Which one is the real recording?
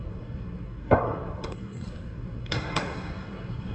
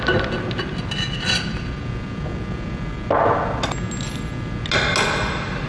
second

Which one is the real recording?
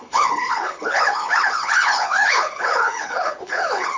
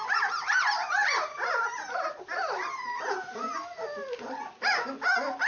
second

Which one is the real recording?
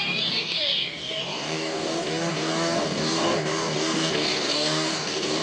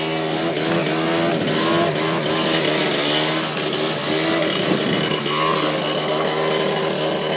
second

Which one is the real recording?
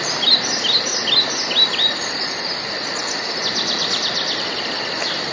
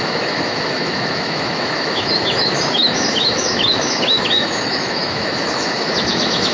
first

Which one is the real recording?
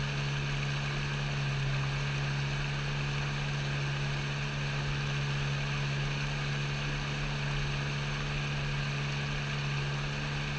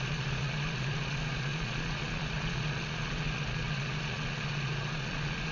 first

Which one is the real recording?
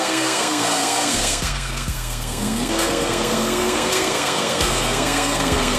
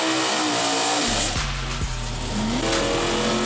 second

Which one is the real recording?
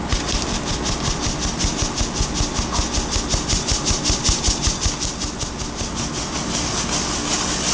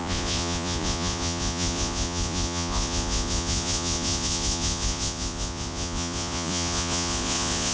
first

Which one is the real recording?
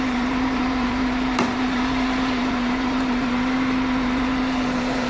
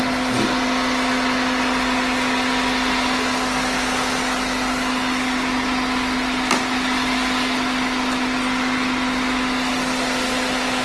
second